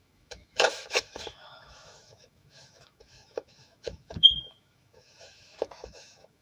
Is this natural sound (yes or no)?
no